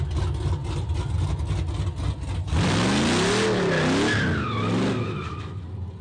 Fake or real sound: real